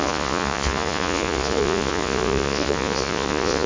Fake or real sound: fake